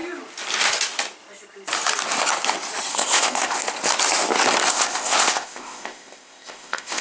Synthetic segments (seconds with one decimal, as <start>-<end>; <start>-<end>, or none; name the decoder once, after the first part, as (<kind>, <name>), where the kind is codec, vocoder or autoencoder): 2.9-3.6 (codec, ZipCodec); 4.7-7.0